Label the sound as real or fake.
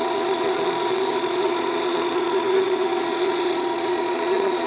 fake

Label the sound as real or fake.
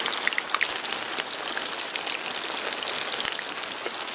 real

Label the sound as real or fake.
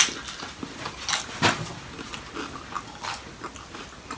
real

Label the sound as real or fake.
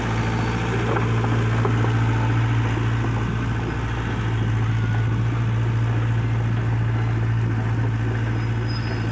real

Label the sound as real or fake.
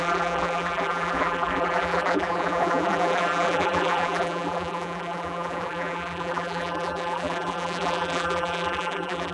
fake